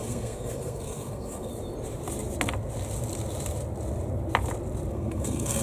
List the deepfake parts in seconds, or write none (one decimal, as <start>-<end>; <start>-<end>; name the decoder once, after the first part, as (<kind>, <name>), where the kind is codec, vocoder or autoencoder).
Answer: 0.0-1.5 (codec, SNAC); 4.9-5.6